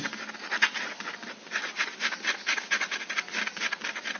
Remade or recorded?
recorded